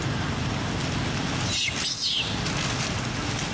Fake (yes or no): no